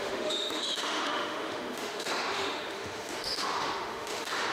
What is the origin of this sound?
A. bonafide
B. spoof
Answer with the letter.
B